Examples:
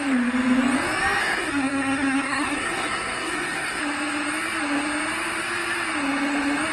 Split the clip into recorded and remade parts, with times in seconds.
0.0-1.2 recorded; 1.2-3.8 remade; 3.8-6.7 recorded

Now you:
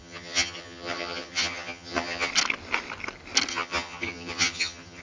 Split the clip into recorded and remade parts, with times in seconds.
0.0-2.3 remade; 2.3-3.5 recorded; 3.5-5.0 remade

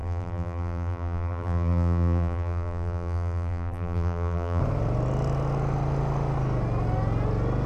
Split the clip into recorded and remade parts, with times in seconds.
0.0-4.6 remade; 4.6-7.7 recorded

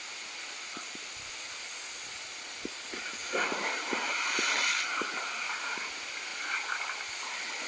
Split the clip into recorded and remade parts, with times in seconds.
0.0-3.2 recorded; 3.2-4.7 remade; 4.7-7.7 recorded

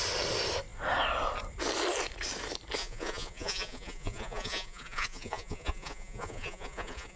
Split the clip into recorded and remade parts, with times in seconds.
0.0-2.8 recorded; 2.8-7.2 remade

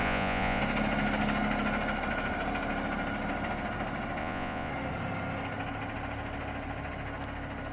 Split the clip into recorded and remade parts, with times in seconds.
0.0-0.6 remade; 0.6-4.2 recorded; 4.2-4.7 remade; 4.7-7.7 recorded

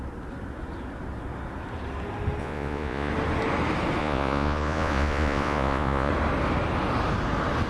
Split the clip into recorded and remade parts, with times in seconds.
0.0-2.4 recorded; 2.4-3.1 remade; 3.1-4.0 recorded; 4.0-6.1 remade; 6.1-7.7 recorded